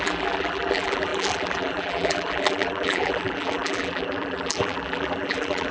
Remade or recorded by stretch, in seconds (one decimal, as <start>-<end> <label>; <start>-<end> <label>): 0.0-5.7 remade